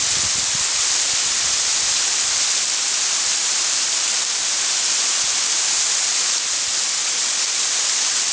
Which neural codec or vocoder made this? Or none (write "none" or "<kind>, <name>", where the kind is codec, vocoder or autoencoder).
none